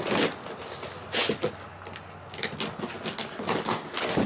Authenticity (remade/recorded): recorded